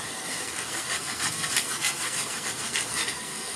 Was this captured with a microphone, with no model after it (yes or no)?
no